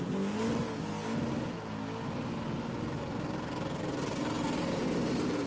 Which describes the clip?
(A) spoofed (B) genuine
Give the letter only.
B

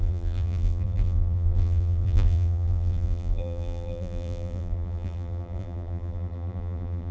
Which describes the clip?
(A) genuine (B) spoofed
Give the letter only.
B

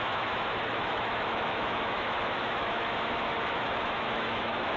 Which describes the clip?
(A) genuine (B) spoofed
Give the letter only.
B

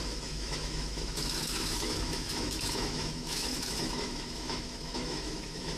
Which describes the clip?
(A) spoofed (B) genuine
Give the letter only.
A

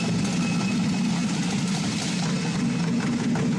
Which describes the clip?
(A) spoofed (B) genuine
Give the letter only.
B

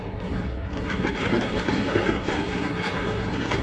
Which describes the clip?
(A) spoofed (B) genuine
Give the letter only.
A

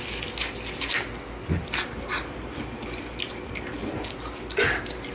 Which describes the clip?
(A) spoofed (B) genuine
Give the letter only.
B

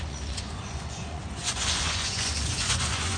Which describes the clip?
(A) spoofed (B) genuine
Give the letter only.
A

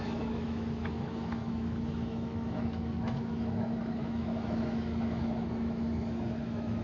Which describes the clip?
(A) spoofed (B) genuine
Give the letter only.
A